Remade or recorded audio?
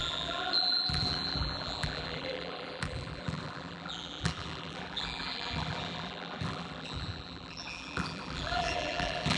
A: remade